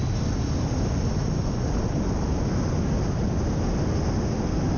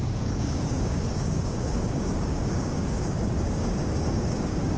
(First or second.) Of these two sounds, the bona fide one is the first